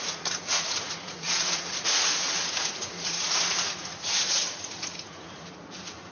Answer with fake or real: fake